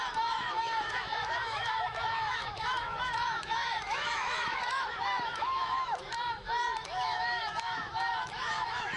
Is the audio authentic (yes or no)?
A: no